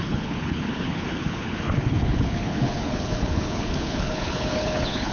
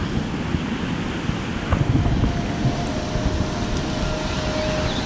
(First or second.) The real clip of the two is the second